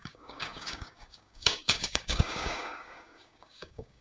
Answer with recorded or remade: remade